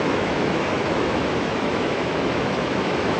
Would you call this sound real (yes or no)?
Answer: no